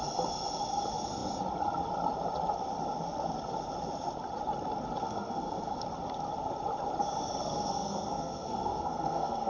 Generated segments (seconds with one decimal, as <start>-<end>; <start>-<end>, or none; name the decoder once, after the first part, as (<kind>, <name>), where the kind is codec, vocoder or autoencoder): 5.0-5.8 (codec, SNAC); 7.4-9.5